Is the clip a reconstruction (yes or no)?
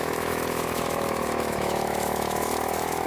yes